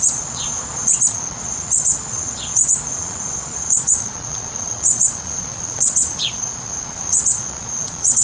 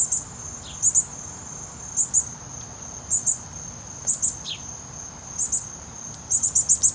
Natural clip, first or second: second